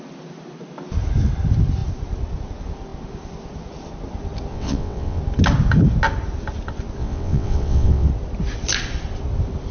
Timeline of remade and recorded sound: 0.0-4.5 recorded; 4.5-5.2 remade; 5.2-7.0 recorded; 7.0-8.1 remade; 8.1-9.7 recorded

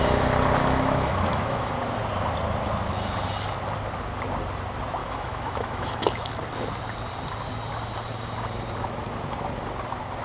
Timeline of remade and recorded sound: 0.0-0.6 recorded; 0.6-1.7 remade; 1.7-5.0 recorded; 5.0-6.4 remade; 6.4-10.2 recorded

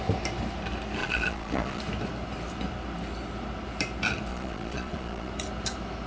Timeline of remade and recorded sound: 0.0-1.0 recorded; 1.0-1.8 remade; 1.8-4.3 recorded; 4.3-5.3 remade; 5.3-6.1 recorded

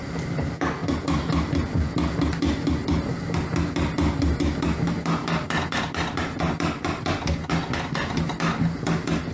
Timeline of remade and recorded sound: 0.0-9.3 recorded

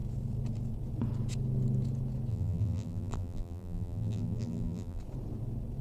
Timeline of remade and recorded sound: 0.0-2.3 recorded; 2.3-5.0 remade; 5.0-5.8 recorded

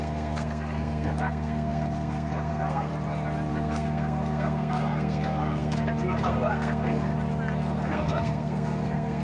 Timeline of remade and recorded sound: 0.0-2.9 remade; 2.9-3.5 recorded; 3.5-7.1 remade; 7.1-7.6 recorded; 7.6-9.2 remade

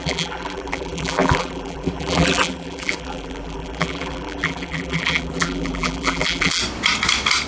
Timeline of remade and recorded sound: 0.0-6.6 remade; 6.6-7.5 recorded

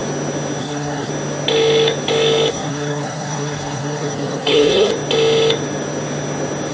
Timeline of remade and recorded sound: 0.0-0.6 recorded; 0.6-1.1 remade; 1.1-2.5 recorded; 2.5-4.9 remade; 4.9-6.7 recorded